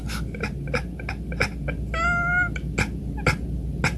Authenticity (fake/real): real